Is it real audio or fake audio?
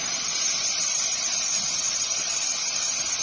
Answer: real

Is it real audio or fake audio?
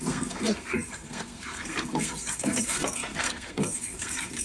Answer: fake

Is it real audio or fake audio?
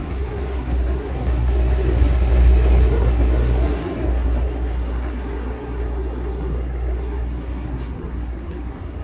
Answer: fake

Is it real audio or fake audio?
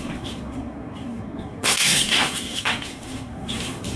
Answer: fake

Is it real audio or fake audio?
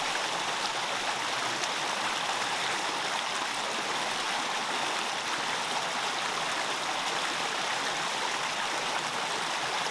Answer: real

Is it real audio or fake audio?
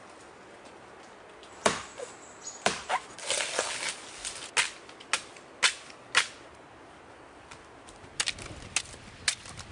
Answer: real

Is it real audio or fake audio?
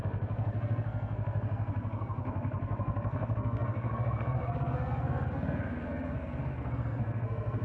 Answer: fake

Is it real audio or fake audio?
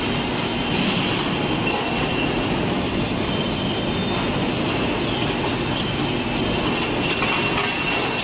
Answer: real